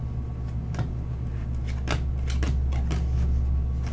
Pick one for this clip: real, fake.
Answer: real